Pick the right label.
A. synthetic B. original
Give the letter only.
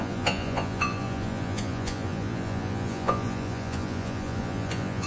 A